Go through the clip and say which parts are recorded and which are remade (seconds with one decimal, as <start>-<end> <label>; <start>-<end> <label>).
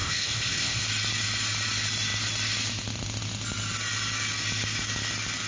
0.0-0.8 remade; 0.8-5.5 recorded